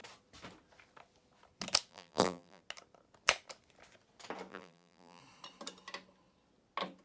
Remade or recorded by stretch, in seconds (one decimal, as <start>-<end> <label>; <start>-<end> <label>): 0.0-1.9 recorded; 1.9-2.6 remade; 2.6-4.5 recorded; 4.5-5.2 remade; 5.2-7.0 recorded

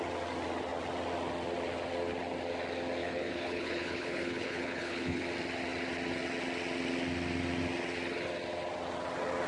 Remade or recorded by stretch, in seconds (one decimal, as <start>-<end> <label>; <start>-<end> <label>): 0.0-3.0 recorded; 3.0-5.2 remade; 5.2-9.5 recorded

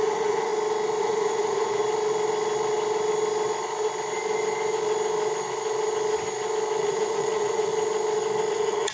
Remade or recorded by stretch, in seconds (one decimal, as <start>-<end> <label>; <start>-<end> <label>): 0.0-0.5 remade; 0.5-1.0 recorded; 1.0-1.8 remade; 1.8-6.8 recorded; 6.8-7.7 remade; 7.7-8.5 recorded; 8.5-8.9 remade